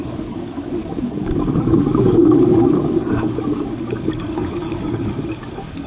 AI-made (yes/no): yes